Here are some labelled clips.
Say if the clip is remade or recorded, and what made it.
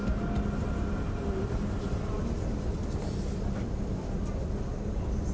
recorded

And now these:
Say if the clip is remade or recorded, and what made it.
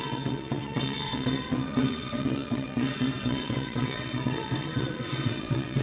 remade, vocoder, WaveNeXt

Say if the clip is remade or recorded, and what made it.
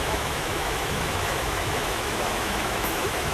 remade, autoencoder, DAC-VAE